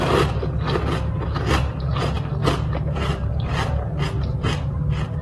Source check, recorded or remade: recorded